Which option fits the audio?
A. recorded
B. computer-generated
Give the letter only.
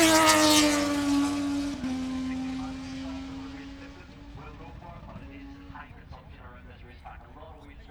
A